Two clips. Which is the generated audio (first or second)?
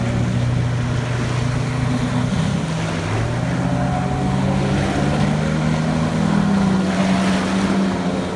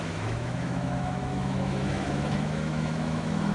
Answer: second